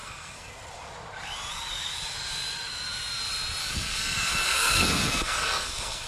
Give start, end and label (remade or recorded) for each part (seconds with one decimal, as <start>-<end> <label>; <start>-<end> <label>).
0.0-0.5 remade; 0.5-3.6 recorded; 3.6-6.1 remade